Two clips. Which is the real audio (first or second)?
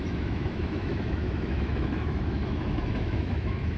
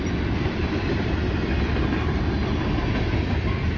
second